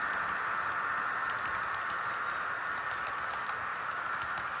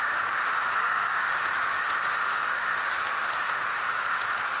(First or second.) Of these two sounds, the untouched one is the first